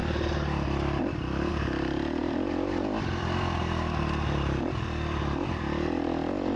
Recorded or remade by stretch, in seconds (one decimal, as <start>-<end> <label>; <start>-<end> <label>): 0.0-1.5 remade; 1.5-2.2 recorded; 2.2-5.6 remade; 5.6-6.6 recorded